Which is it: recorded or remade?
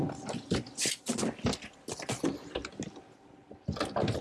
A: recorded